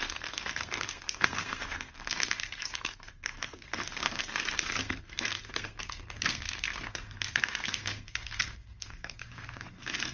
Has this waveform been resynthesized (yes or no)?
yes